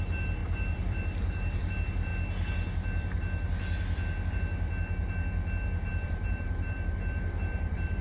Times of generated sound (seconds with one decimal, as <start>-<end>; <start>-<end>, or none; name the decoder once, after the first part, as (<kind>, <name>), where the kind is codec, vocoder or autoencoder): 0.4-1.7 (vocoder, BigVGAN v2); 5.9-8.0